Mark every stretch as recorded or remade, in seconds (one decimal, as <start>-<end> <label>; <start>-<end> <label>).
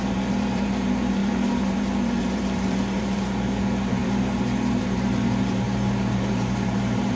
0.0-7.2 remade